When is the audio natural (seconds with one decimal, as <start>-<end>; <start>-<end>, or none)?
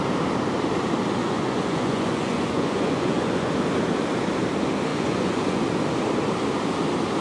0.0-1.2; 3.5-4.9; 5.6-7.2